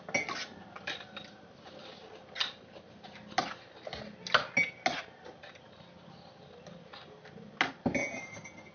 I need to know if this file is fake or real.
real